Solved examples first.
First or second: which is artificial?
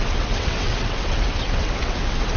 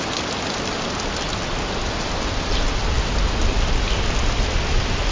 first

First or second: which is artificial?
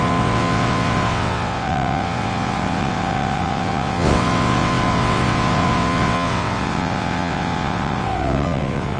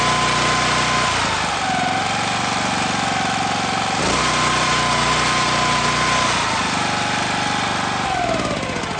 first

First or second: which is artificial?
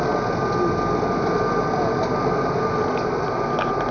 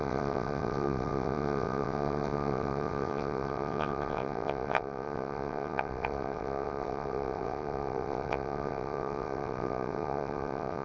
second